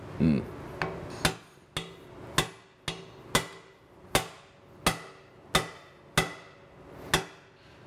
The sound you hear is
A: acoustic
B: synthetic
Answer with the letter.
A